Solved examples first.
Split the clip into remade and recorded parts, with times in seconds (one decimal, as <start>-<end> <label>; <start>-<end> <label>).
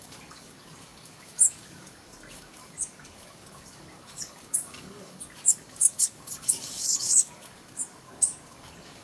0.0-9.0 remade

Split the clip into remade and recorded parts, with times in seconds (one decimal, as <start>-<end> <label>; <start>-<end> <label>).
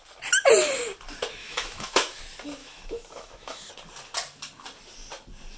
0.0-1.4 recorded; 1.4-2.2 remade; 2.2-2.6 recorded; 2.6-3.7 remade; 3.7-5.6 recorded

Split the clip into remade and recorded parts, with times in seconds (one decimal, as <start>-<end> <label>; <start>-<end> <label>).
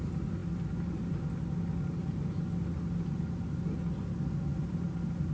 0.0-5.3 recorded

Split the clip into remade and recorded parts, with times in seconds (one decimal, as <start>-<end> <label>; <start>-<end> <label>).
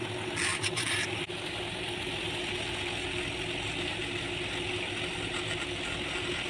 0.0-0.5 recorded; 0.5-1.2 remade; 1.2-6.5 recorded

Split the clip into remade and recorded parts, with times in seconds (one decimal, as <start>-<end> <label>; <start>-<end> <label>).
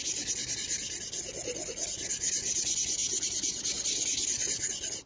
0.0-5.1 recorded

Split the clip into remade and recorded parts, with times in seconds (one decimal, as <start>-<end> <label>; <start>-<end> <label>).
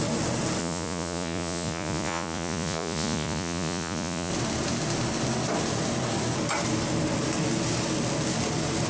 0.0-0.6 recorded; 0.6-4.3 remade; 4.3-8.9 recorded